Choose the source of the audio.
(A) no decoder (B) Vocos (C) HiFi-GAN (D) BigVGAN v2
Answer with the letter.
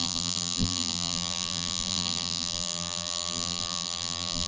D